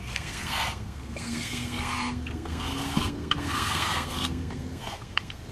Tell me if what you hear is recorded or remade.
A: remade